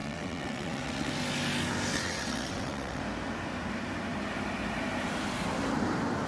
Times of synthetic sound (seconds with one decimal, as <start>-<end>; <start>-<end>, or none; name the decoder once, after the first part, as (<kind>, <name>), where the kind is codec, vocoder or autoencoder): 0.0-1.1 (vocoder, WaveNeXt); 1.9-3.0